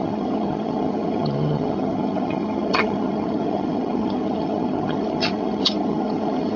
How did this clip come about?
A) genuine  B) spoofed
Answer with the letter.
B